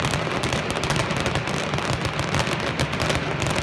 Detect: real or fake real